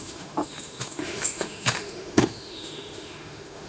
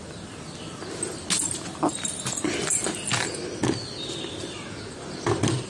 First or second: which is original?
second